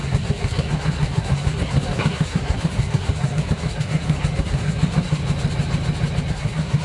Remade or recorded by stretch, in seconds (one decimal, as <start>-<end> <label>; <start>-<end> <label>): 0.0-5.2 remade; 5.2-6.3 recorded; 6.3-6.8 remade